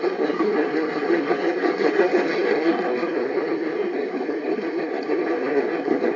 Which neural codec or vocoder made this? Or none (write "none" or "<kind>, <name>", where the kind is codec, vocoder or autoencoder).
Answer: codec, SNAC